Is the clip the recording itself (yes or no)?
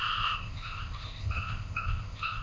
no